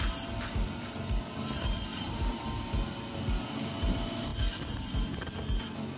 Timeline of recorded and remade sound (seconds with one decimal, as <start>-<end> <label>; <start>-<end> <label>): 0.0-1.9 recorded; 1.9-2.4 remade; 2.4-6.0 recorded